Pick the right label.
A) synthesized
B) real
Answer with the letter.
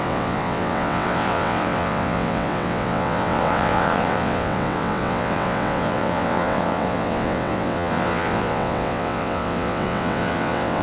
A